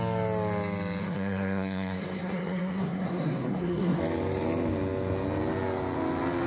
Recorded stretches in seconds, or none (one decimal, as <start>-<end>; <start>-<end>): 0.0-1.0; 4.0-6.5